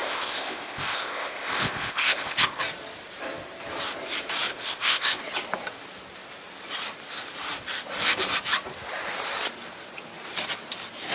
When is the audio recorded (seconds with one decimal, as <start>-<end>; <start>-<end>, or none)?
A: 2.6-4.5; 5.2-11.1